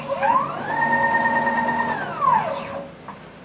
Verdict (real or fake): real